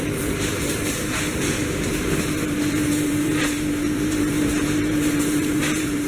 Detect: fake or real fake